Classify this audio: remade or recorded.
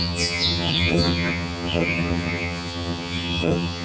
remade